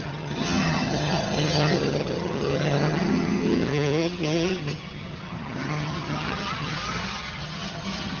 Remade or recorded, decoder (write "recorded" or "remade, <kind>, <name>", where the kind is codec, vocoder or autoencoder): remade, vocoder, HiFi-GAN